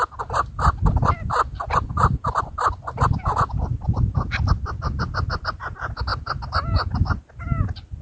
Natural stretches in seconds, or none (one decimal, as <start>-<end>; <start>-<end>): 0.0-8.0